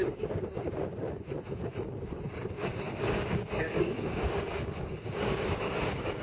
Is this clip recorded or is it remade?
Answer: remade